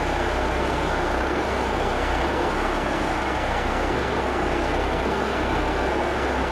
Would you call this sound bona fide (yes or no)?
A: no